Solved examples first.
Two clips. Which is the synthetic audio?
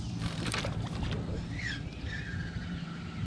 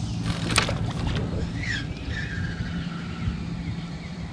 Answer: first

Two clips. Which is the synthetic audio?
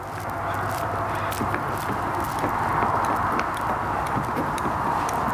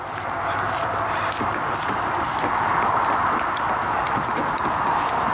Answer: second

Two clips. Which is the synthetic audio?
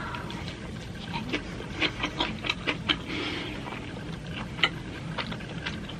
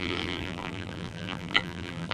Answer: second